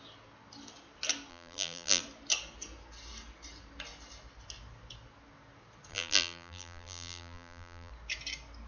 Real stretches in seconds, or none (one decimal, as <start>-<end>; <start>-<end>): 0.0-1.3; 2.0-5.9; 7.9-8.7